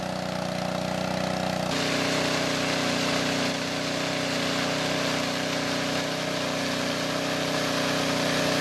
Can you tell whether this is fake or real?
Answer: real